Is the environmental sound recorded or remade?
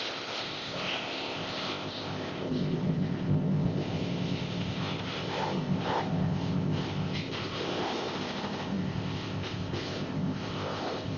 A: remade